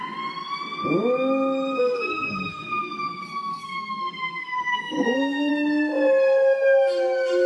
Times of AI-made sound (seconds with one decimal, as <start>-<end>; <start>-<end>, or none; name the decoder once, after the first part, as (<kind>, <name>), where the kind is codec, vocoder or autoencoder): 1.8-5.5 (codec, SNAC)